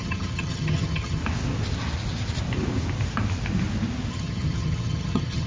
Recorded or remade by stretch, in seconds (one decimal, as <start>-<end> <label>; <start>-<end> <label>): 0.0-1.2 remade; 1.2-4.1 recorded; 4.1-5.5 remade